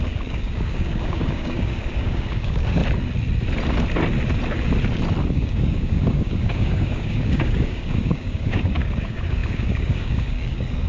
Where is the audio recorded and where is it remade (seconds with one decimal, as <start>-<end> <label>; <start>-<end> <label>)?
0.0-2.8 remade; 2.8-5.3 recorded; 5.3-10.9 remade